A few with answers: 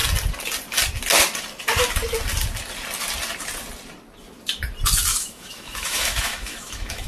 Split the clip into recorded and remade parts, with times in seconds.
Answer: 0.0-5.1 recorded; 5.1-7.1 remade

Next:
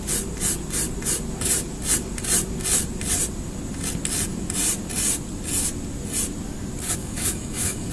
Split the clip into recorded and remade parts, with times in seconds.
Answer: 0.0-7.0 recorded; 7.0-7.9 remade